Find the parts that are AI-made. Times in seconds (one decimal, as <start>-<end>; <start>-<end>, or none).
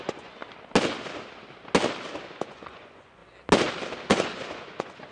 0.0-0.4; 2.2-3.2; 4.1-5.1